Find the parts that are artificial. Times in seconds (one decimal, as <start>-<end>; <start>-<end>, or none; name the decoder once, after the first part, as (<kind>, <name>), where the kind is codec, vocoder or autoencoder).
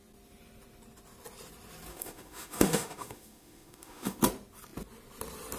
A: 1.9-4.2 (autoencoder, DAC-VAE)